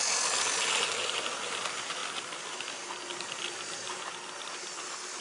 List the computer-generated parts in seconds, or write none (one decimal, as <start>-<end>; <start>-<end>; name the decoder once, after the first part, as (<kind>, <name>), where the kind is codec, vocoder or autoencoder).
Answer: none